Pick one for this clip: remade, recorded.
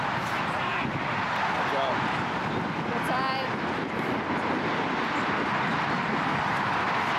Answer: recorded